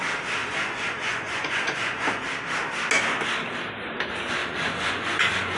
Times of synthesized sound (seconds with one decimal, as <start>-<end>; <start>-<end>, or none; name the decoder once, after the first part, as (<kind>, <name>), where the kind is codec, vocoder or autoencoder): 0.4-2.2 (vocoder, Vocos); 4.4-5.6